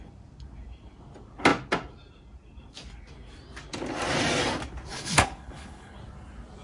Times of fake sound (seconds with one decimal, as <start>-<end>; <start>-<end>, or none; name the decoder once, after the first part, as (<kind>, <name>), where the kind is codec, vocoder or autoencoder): 4.9-6.0 (codec, HILCodec)